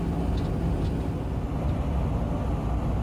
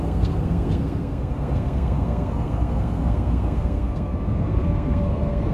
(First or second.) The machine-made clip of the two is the second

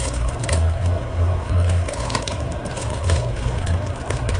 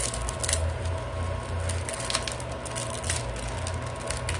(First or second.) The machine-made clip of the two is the first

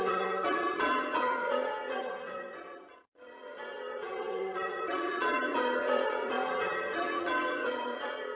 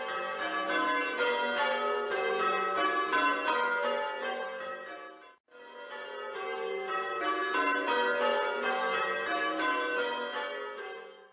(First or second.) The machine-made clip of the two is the first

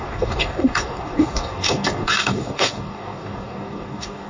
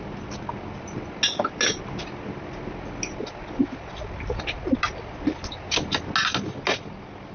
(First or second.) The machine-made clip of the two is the first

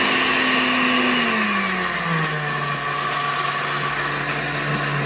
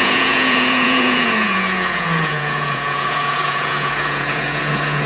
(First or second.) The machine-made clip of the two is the second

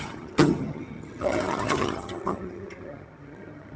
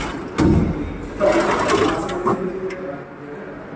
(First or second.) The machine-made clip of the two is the first